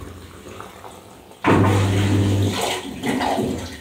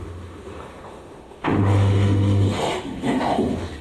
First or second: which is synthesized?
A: second